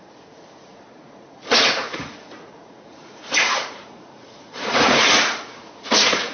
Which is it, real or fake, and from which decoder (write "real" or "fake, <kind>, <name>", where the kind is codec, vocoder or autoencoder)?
fake, vocoder, Vocos